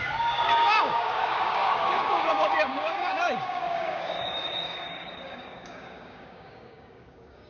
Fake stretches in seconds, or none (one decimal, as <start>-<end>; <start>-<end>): 0.0-7.5